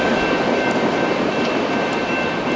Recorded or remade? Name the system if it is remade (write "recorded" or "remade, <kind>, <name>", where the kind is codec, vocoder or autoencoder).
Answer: remade, vocoder, BigVGAN v2